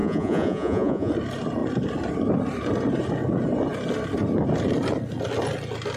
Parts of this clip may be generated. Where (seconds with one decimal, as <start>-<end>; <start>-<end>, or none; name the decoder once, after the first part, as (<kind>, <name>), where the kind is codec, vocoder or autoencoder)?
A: 0.0-1.1 (vocoder, Vocos)